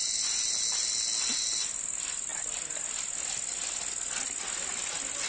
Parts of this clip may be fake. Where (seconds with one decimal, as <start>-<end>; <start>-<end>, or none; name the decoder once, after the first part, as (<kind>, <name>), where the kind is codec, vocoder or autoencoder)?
none